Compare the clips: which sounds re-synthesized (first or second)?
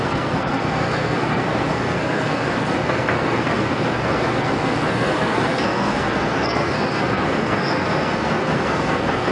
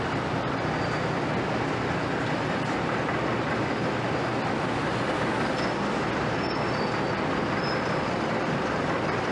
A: first